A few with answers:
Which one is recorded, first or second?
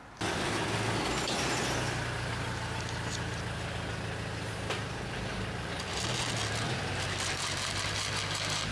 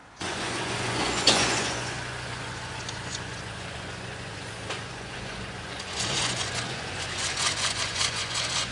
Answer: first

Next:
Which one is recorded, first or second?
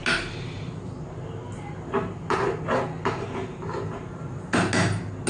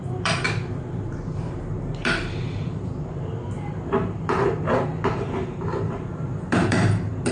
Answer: first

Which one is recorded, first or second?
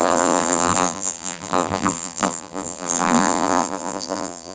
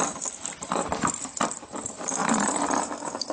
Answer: second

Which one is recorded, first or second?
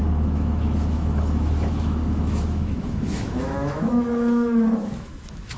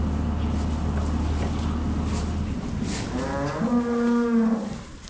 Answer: second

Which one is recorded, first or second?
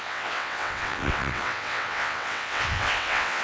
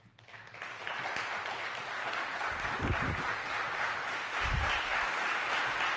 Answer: second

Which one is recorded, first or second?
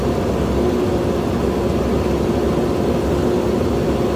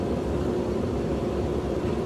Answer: first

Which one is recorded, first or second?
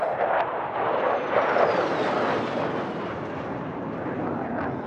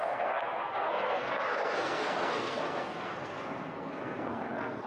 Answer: first